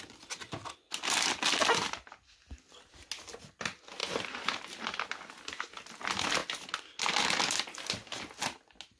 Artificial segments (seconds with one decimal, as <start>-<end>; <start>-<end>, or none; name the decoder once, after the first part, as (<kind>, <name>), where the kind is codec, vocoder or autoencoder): none